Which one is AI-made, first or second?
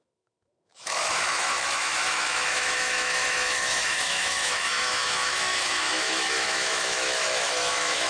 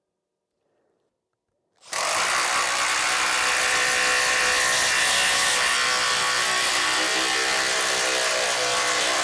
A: first